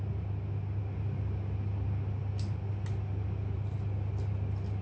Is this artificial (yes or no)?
no